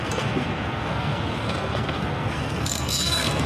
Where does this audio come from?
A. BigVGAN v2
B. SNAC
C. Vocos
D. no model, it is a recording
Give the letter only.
B